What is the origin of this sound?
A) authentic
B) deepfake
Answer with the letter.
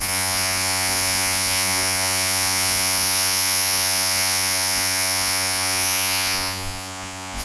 B